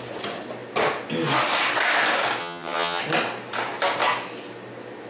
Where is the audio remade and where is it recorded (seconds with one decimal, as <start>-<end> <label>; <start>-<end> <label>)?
0.0-2.4 recorded; 2.4-3.0 remade; 3.0-5.1 recorded

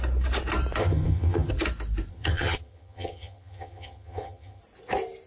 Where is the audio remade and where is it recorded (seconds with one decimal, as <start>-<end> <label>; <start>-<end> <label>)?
0.0-0.8 recorded; 0.8-1.5 remade; 1.5-2.1 recorded; 2.1-4.6 remade; 4.6-5.3 recorded